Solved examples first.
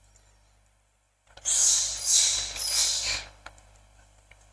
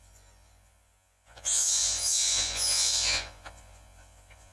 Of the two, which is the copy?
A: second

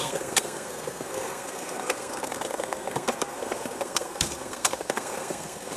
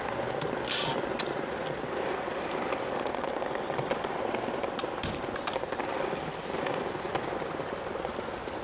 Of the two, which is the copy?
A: first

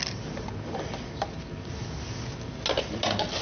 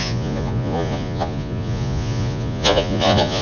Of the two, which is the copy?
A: second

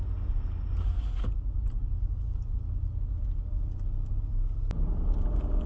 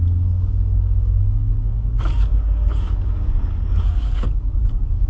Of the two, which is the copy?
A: second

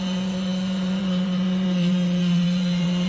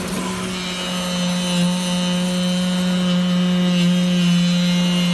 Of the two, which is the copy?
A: first